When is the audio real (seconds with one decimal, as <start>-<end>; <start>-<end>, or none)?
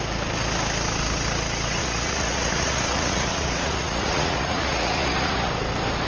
0.0-1.8; 5.5-6.1